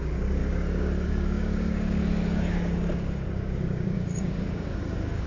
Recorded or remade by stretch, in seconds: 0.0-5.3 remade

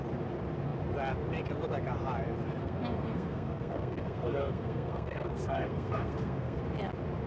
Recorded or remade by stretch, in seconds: 0.0-2.6 recorded; 2.6-6.6 remade; 6.6-7.3 recorded

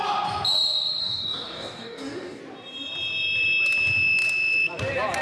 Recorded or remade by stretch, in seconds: 0.0-1.0 recorded; 1.0-2.4 remade; 2.4-5.2 recorded

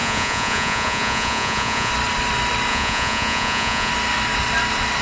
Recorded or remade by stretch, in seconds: 0.0-1.9 remade; 1.9-2.7 recorded; 2.7-3.9 remade; 3.9-5.0 recorded

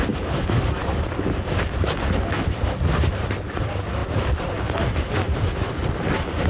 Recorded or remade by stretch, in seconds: 0.0-4.0 recorded; 4.0-5.9 remade; 5.9-6.5 recorded

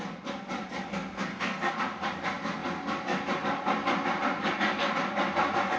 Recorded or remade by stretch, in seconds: 0.0-0.9 recorded; 0.9-1.7 remade; 1.7-5.8 recorded